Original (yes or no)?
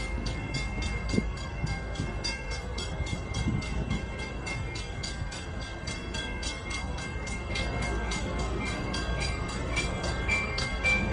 no